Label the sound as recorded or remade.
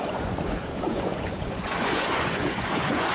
remade